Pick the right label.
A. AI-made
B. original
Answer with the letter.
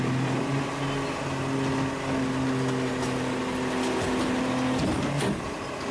B